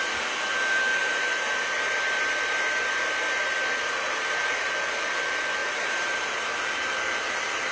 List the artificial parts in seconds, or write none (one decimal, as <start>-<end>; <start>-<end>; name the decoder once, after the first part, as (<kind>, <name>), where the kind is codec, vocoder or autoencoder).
1.0-4.7 (vocoder, BigVGAN v2); 5.6-6.3